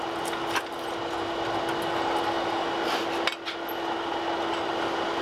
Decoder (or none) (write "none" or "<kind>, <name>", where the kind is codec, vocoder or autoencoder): none